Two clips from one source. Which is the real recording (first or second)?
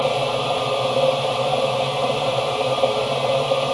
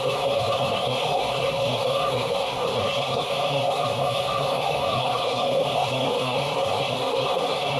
first